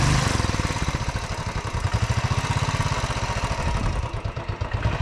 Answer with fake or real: fake